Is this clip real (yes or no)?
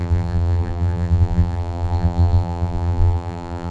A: no